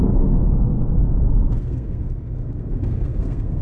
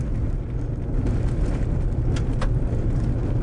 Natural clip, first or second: second